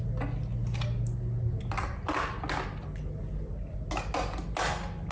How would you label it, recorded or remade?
recorded